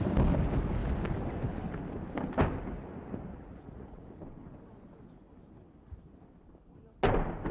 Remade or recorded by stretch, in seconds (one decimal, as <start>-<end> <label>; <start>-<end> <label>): 0.0-3.3 recorded; 3.3-4.2 remade; 4.2-7.5 recorded